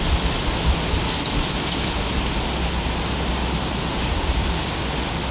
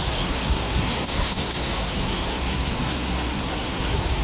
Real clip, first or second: first